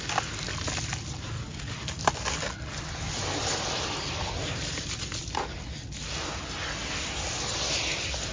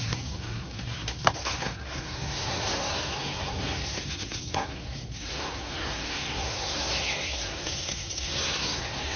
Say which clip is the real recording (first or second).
first